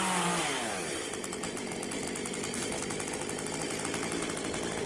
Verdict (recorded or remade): recorded